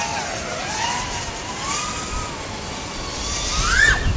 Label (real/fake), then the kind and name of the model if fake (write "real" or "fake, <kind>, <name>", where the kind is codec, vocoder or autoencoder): real